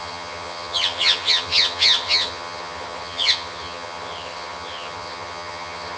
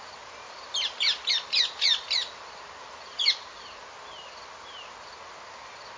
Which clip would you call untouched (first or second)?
second